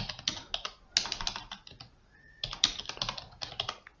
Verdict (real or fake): real